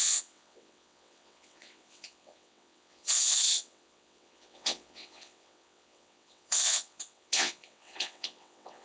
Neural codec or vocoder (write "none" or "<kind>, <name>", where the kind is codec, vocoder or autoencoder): vocoder, WaveNeXt